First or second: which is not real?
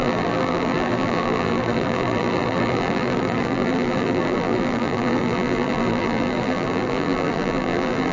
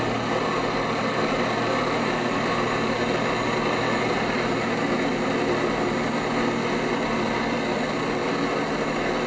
first